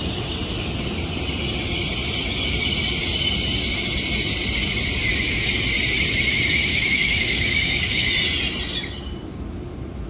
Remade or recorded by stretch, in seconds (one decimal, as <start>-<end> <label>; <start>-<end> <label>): 0.0-6.6 recorded; 6.6-8.1 remade; 8.1-10.1 recorded